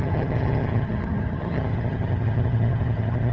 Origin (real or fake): fake